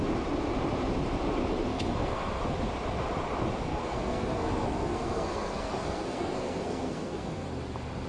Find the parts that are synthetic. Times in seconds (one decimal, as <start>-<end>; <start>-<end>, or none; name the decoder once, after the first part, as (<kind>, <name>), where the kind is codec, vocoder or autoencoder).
1.7-2.4 (codec, SNAC); 3.7-7.5